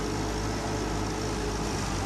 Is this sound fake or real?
real